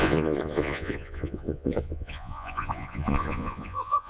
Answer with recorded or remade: remade